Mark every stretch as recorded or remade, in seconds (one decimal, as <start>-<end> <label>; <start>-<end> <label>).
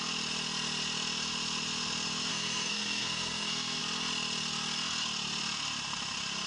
0.0-2.3 recorded; 2.3-3.8 remade; 3.8-6.5 recorded